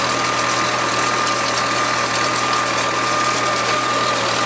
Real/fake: real